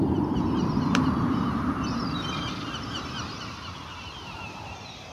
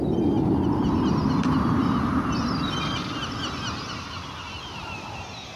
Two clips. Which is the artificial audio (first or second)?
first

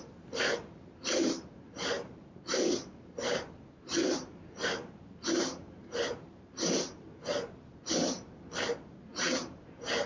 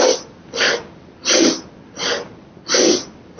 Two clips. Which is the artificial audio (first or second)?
first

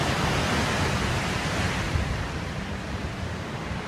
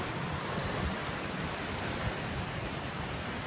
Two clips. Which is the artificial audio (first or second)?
second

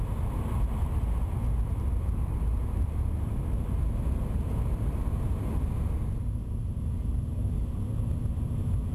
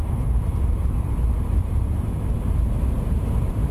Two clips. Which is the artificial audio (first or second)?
second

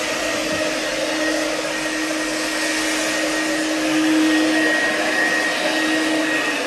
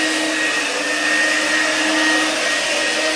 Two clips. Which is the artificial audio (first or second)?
first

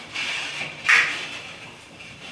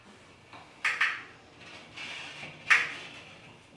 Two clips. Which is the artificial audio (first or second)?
first